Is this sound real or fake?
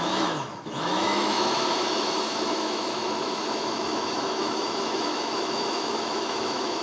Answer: fake